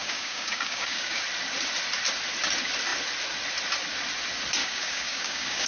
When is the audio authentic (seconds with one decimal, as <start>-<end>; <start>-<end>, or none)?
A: 1.2-4.6